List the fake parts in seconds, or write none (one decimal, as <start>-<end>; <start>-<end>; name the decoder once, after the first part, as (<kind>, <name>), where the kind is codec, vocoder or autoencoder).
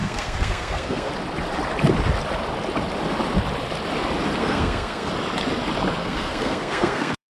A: 0.0-1.1 (codec, SNAC); 4.4-5.1; 6.0-7.4